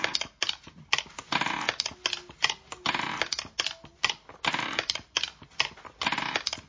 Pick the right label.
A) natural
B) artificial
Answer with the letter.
A